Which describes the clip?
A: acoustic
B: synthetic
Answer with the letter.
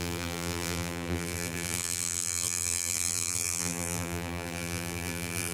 B